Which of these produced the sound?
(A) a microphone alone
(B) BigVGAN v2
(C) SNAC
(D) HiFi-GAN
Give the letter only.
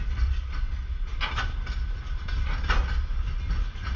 A